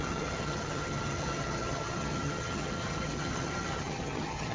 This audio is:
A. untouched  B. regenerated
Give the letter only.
B